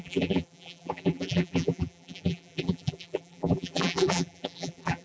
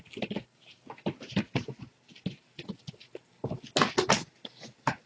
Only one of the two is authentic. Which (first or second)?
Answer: second